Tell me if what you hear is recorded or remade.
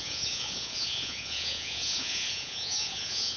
remade